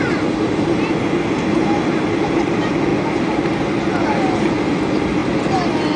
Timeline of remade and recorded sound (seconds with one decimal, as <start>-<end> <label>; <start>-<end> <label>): 0.0-6.0 recorded